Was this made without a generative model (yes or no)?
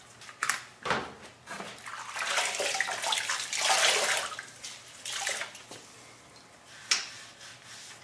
yes